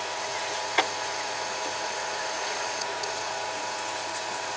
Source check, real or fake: fake